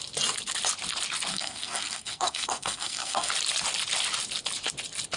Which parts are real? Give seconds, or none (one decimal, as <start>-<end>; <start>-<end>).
0.0-1.3; 3.3-5.2